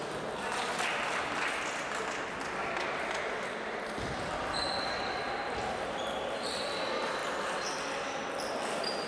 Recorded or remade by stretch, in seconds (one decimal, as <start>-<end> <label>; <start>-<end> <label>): 0.0-9.1 recorded